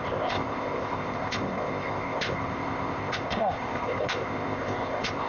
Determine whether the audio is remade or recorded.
remade